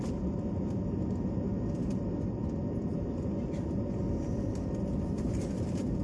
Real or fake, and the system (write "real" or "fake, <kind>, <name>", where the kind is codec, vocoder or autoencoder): real